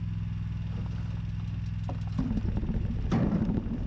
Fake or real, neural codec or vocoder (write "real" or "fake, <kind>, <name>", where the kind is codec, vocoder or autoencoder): real